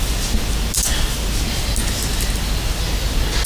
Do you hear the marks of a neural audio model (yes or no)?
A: no